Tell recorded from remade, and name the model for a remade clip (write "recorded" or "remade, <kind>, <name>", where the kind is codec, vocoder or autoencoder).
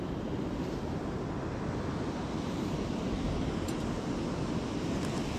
recorded